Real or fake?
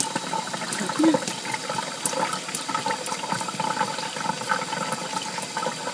real